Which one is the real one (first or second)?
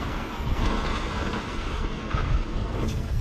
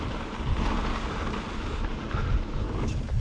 second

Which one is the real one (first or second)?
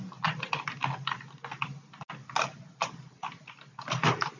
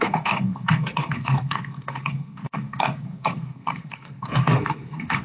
first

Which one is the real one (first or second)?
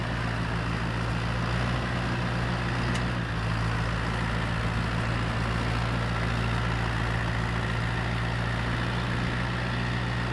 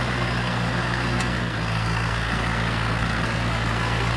first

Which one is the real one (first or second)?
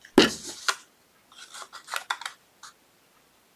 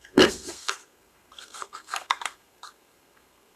first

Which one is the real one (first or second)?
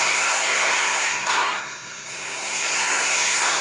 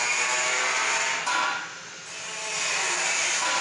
second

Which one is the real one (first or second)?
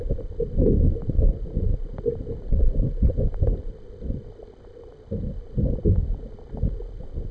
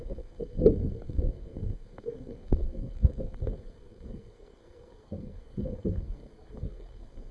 first